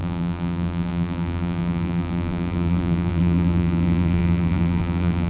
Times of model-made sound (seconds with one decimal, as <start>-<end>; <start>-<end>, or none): 0.0-5.3